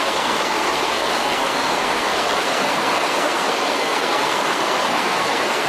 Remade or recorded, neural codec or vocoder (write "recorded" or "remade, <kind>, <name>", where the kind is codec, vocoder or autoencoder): remade, codec, SNAC